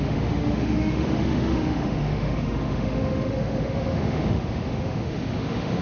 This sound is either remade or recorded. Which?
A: remade